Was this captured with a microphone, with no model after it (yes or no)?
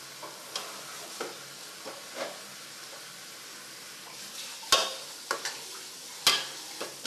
yes